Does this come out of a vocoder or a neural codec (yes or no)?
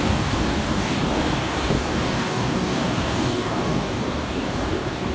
yes